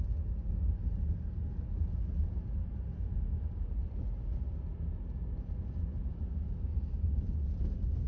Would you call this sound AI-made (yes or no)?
no